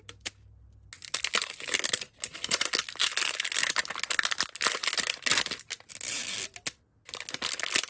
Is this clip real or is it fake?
real